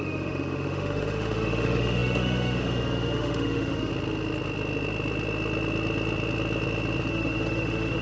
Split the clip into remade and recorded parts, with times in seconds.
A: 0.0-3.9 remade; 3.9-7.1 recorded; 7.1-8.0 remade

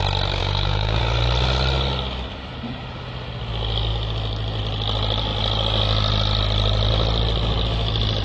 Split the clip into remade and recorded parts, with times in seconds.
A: 0.0-0.4 recorded; 0.4-1.0 remade; 1.0-8.2 recorded

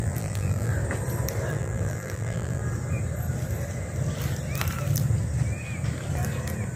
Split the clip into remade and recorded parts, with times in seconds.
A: 0.0-0.7 remade; 0.7-1.5 recorded; 1.5-2.6 remade; 2.6-6.8 recorded

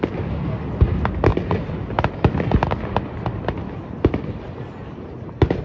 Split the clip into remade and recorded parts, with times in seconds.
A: 0.0-5.6 recorded

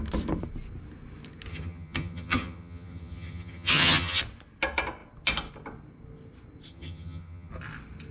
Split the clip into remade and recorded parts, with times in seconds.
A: 0.0-1.5 recorded; 1.5-4.2 remade; 4.2-6.7 recorded; 6.7-7.5 remade; 7.5-8.1 recorded

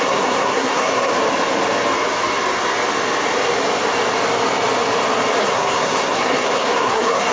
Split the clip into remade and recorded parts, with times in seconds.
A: 0.0-1.1 remade; 1.1-5.4 recorded; 5.4-7.3 remade

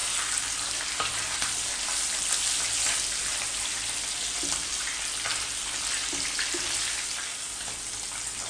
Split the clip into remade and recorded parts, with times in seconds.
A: 0.0-8.5 recorded